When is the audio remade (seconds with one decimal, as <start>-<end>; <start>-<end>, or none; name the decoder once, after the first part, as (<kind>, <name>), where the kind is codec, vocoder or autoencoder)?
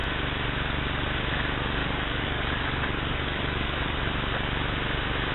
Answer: 1.8-4.0 (codec, DAC)